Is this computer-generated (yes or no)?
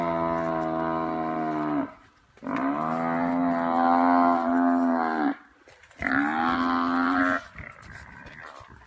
no